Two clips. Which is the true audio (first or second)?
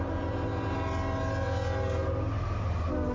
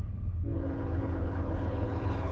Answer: first